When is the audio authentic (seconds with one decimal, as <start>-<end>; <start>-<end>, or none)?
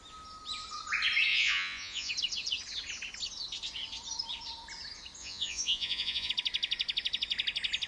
0.0-1.3; 2.1-5.2; 6.3-7.9